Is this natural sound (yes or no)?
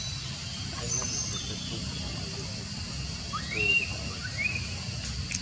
yes